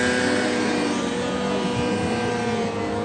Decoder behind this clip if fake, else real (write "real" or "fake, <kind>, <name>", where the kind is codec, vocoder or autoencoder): real